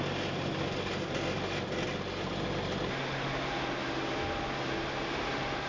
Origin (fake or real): real